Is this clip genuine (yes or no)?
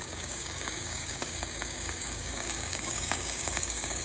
no